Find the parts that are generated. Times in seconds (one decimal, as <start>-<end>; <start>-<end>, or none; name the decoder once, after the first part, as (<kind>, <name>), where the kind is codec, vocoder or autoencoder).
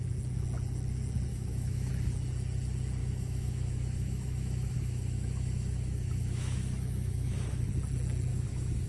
1.3-1.9 (autoencoder, DAC-VAE); 3.0-7.7; 8.3-8.9